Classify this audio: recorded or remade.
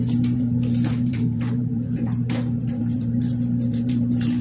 remade